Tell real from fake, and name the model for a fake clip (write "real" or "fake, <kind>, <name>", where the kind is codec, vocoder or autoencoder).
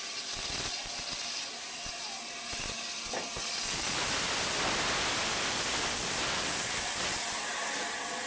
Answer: real